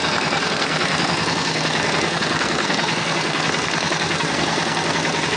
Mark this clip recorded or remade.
remade